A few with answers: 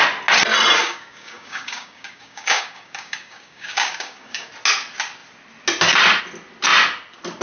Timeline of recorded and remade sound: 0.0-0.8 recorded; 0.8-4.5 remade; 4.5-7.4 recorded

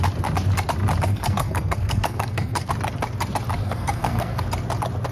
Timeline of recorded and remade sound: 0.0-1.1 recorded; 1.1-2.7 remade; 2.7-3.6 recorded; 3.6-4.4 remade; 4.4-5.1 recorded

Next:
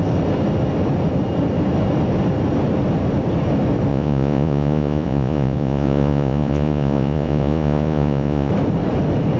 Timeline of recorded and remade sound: 0.0-3.9 recorded; 3.9-8.5 remade; 8.5-9.4 recorded